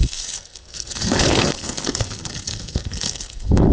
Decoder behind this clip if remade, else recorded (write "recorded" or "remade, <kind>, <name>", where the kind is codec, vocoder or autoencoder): remade, codec, SNAC